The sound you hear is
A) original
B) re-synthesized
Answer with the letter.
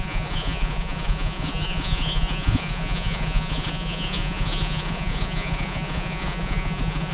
B